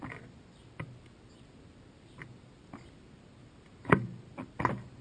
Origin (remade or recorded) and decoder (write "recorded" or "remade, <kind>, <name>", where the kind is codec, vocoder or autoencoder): recorded